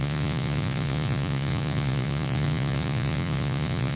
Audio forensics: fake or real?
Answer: fake